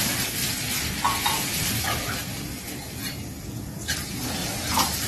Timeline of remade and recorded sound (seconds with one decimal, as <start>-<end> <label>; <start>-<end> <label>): 0.0-5.1 recorded